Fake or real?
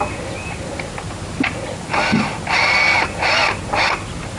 real